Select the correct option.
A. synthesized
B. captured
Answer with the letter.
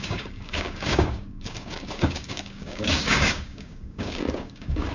A